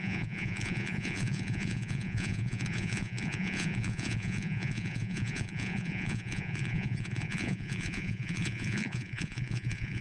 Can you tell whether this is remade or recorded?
remade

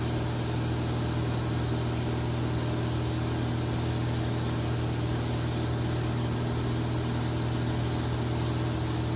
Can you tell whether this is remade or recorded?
recorded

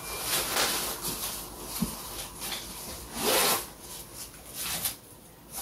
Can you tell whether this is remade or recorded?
recorded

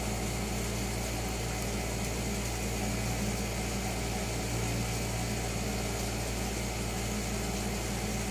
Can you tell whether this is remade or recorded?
recorded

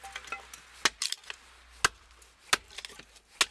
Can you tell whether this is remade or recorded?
recorded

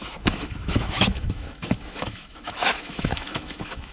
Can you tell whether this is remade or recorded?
remade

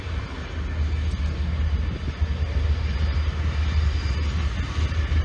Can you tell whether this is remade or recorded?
recorded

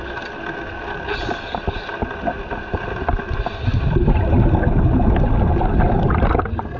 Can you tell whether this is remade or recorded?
recorded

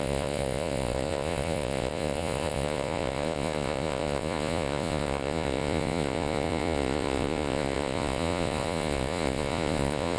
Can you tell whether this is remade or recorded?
remade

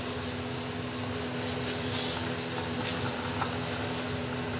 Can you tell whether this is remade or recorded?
recorded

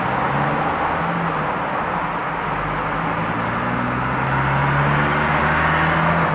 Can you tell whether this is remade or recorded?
recorded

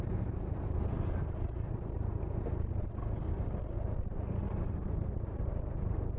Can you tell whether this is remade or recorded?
recorded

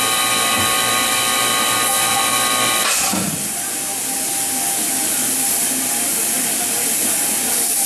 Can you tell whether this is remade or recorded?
recorded